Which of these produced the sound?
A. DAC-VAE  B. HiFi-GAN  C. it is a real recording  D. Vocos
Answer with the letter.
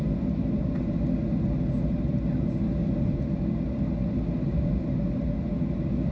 C